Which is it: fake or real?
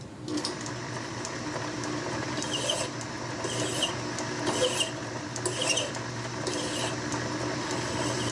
real